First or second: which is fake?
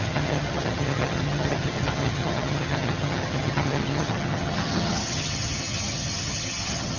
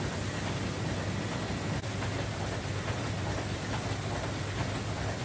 first